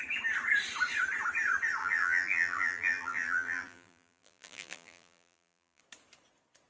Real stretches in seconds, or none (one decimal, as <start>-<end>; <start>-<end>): 0.0-1.8; 5.8-6.7